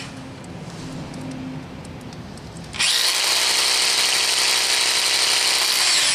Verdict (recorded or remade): recorded